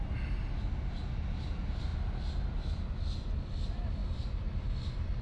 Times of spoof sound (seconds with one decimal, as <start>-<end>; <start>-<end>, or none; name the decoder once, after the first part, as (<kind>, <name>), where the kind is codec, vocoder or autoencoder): none